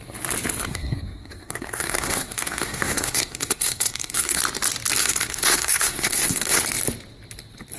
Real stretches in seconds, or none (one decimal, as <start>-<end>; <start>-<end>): 0.0-0.7; 4.4-5.0; 6.6-7.8